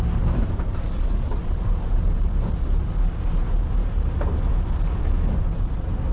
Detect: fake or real real